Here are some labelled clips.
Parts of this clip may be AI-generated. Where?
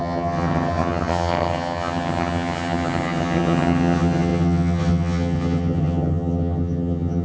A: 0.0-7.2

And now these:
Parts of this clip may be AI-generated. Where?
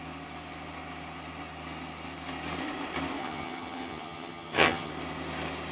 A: 3.2-4.9